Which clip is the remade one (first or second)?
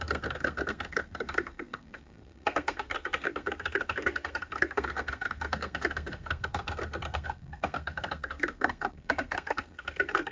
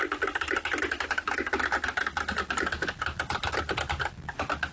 first